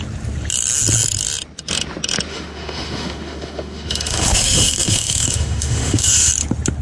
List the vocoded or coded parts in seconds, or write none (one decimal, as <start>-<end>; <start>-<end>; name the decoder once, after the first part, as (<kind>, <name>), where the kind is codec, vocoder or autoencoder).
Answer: 2.3-6.3 (autoencoder, DAC-VAE)